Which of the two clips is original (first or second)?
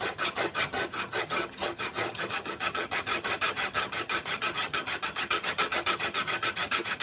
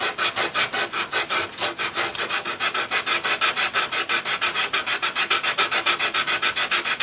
second